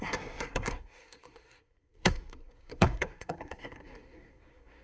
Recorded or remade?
remade